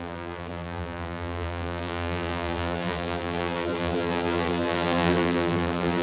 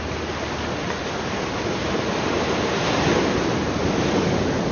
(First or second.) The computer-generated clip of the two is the first